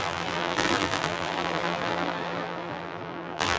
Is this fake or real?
fake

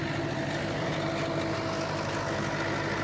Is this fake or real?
real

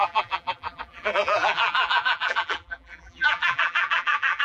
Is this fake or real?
fake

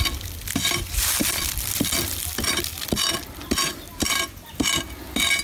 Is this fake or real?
real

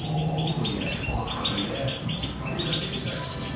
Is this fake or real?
real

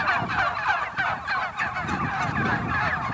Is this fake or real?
real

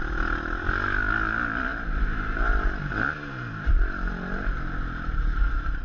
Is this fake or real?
real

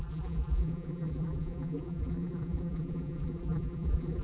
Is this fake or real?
fake